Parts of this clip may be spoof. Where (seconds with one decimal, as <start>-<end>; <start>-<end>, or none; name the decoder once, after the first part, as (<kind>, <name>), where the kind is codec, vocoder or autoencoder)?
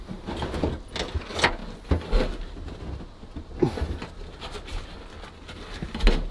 none